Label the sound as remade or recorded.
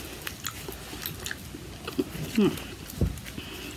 recorded